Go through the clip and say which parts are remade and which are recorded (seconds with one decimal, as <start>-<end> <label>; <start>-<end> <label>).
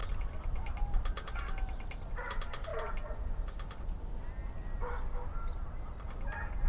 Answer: 0.0-6.7 recorded